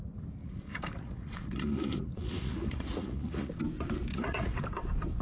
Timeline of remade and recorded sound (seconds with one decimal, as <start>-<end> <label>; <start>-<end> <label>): 0.0-0.4 recorded; 0.4-3.5 remade; 3.5-4.1 recorded; 4.1-4.6 remade; 4.6-5.2 recorded